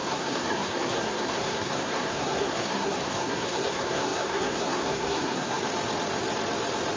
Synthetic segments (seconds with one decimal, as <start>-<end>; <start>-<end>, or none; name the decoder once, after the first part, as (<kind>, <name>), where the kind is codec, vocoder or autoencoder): 0.0-5.6 (codec, SNAC)